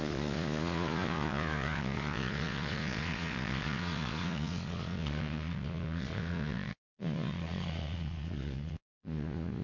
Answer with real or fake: fake